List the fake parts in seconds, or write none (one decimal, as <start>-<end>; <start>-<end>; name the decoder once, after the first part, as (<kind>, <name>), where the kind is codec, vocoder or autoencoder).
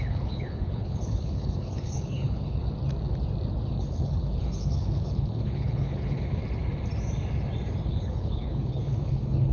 0.0-2.6 (codec, HILCodec); 3.7-6.4; 7.9-9.5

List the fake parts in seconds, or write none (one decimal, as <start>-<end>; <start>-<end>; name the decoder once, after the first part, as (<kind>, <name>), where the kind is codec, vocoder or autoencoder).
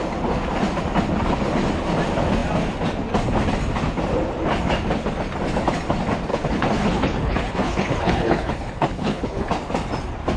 6.3-9.5 (codec, HILCodec)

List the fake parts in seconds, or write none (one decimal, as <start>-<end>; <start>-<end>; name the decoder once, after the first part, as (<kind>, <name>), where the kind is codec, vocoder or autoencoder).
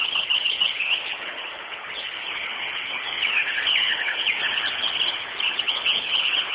0.0-6.5 (codec, HILCodec)